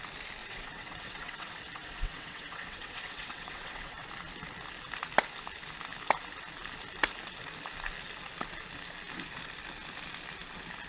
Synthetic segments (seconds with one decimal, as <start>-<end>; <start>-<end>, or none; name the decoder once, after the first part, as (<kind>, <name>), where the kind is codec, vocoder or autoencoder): 0.4-4.1 (vocoder, WaveNeXt)